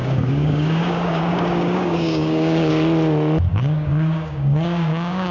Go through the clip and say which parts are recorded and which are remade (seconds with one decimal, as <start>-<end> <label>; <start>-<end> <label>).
0.0-2.7 remade; 2.7-3.5 recorded; 3.5-5.3 remade